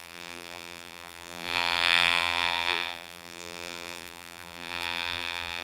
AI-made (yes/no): yes